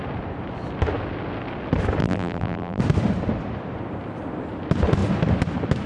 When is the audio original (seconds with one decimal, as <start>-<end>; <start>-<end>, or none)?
0.0-2.0; 2.8-5.9